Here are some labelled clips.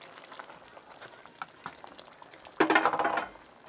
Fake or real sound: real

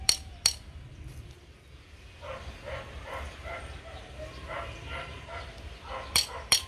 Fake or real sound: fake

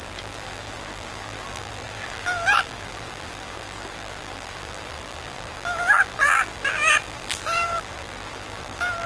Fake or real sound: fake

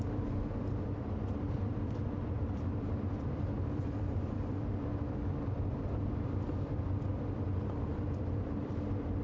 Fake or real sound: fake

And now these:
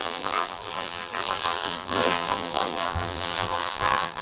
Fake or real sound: fake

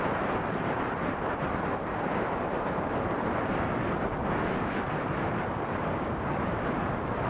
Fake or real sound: fake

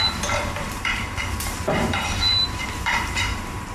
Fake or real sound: fake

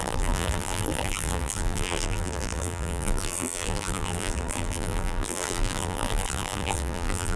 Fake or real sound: fake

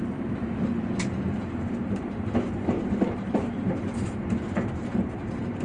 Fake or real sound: fake